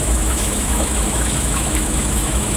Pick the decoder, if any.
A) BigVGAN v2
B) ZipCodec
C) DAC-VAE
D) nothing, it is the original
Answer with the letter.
C